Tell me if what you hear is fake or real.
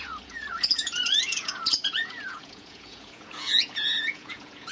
fake